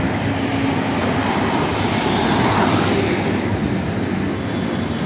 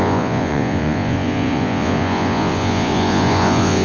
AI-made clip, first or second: second